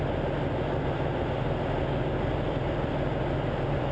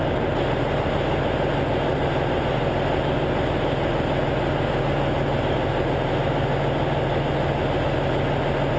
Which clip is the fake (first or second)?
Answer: first